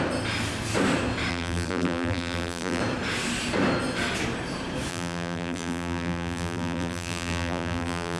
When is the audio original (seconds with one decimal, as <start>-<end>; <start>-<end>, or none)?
0.0-1.3; 2.8-4.9